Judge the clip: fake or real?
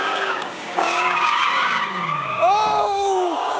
fake